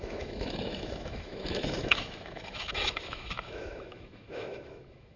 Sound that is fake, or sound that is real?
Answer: fake